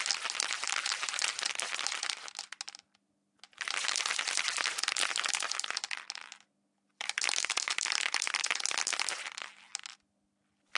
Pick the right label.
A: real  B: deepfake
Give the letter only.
A